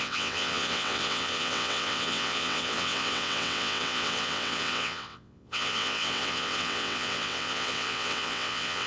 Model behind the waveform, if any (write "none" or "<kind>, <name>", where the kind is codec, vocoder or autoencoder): vocoder, WaveNeXt